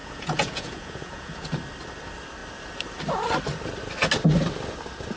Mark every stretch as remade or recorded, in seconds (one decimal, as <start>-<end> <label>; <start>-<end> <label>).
0.0-1.5 remade; 1.5-5.2 recorded